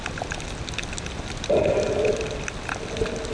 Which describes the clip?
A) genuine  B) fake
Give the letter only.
A